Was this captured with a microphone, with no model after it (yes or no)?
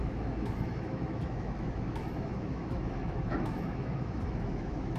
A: no